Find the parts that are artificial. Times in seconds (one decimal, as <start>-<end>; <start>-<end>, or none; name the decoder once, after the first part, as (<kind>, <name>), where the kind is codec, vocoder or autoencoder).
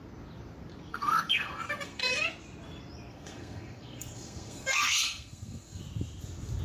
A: 0.9-2.3 (codec, SNAC); 3.1-5.8